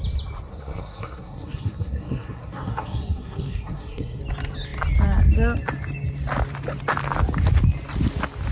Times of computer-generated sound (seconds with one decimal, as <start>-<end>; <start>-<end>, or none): 0.5-4.2